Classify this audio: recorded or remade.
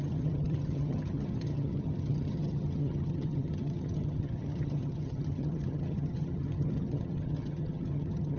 remade